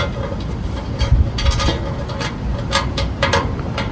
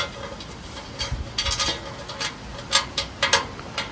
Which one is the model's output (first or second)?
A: first